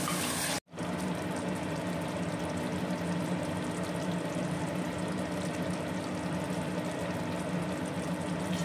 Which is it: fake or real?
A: real